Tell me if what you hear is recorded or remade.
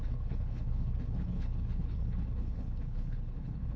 remade